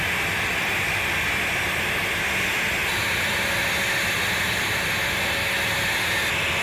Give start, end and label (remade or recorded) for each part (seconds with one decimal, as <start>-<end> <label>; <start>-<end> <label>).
0.0-6.6 recorded